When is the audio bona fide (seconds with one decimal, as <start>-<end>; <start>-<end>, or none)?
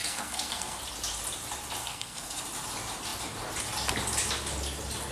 0.8-1.8; 2.4-5.1